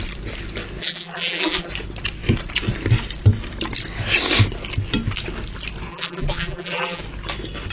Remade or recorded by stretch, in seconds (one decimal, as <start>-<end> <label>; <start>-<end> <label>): 0.0-0.8 recorded; 0.8-1.7 remade; 1.7-5.9 recorded; 5.9-7.0 remade; 7.0-7.7 recorded